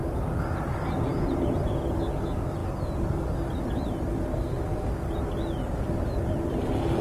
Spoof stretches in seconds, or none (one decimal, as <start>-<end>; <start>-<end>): 4.3-4.9